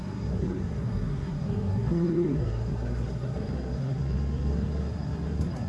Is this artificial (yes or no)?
yes